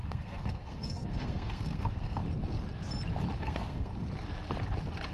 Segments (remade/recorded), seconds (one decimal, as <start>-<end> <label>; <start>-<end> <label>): 0.0-2.2 remade; 2.2-3.4 recorded; 3.4-3.9 remade; 3.9-5.1 recorded